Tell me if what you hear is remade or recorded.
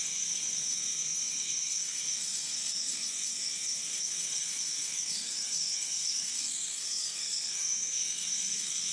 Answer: remade